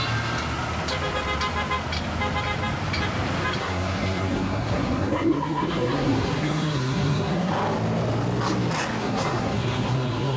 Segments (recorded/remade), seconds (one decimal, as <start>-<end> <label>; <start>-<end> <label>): 0.0-3.6 recorded; 3.6-7.5 remade; 7.5-9.0 recorded; 9.0-10.4 remade